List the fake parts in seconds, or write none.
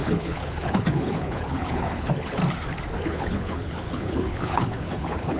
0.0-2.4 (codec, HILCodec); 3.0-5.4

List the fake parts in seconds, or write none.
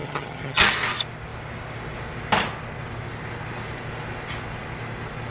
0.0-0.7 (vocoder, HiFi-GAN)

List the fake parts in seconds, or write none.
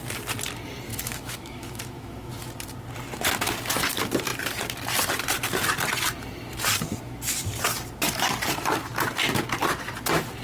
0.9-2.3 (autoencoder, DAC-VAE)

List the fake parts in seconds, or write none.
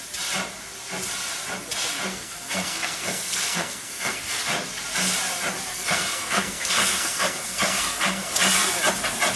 2.1-4.4 (codec, SNAC); 5.7-8.3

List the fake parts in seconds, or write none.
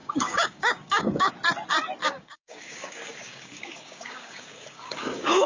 0.0-1.3 (codec, DAC); 2.0-5.5